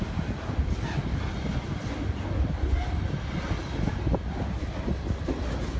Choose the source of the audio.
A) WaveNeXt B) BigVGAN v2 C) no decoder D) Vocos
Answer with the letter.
C